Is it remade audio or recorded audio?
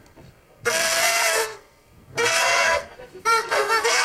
remade